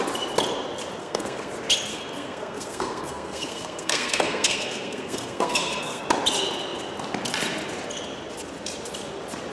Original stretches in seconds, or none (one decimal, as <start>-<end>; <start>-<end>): 0.0-1.0; 1.5-1.9; 6.0-9.5